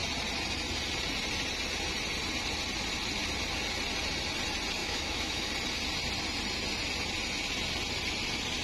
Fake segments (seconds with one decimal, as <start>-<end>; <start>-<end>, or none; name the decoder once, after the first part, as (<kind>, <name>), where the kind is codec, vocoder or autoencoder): 4.8-5.5 (autoencoder, DAC-VAE)